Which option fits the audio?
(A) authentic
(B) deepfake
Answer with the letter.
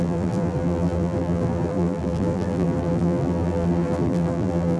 B